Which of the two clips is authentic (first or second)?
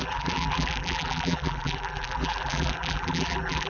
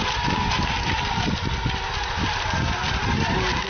second